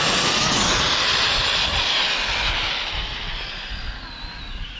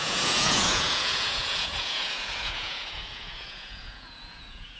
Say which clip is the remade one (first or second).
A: second